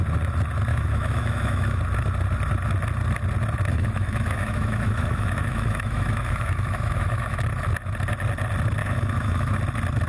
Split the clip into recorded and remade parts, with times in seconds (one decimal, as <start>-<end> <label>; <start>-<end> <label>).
0.0-0.7 recorded; 0.7-1.8 remade; 1.8-3.7 recorded; 3.7-7.4 remade; 7.4-8.8 recorded; 8.8-9.6 remade; 9.6-10.1 recorded